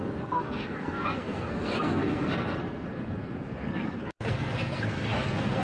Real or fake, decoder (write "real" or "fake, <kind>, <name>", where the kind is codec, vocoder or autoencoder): fake, codec, SNAC